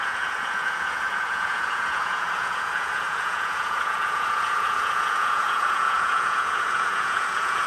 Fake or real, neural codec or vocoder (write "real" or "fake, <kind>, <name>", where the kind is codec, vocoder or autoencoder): fake, vocoder, Vocos